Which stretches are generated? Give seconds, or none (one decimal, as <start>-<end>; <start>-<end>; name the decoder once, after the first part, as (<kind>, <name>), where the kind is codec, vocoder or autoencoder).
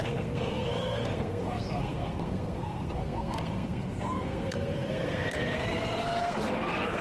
0.0-7.0 (codec, SNAC)